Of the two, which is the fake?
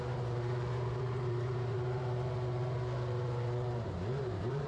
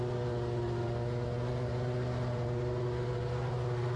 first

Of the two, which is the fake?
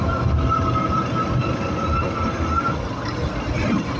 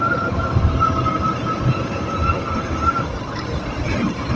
second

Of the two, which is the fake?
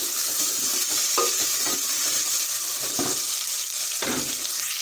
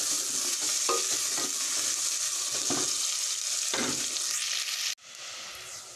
first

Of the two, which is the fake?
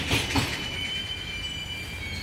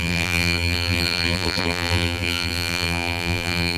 second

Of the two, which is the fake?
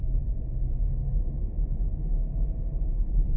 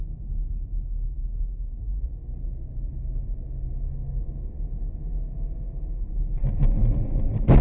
first